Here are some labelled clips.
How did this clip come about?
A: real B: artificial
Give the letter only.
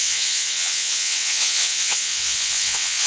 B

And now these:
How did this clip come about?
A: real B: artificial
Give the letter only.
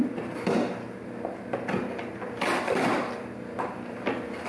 A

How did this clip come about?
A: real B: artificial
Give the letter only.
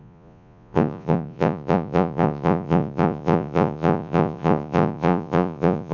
B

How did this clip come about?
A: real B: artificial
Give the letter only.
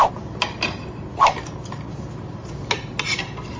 A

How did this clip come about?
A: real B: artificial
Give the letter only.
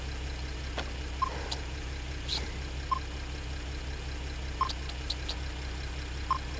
A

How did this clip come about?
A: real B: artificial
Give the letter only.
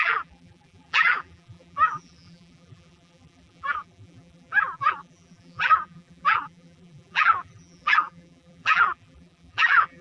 B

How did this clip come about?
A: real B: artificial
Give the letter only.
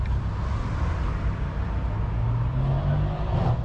A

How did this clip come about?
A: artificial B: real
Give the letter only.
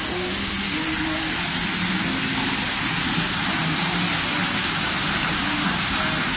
B